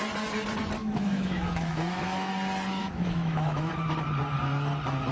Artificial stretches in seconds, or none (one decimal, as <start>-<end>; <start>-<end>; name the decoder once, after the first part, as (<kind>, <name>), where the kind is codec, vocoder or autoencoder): 0.8-2.3 (autoencoder, DAC-VAE); 2.8-3.7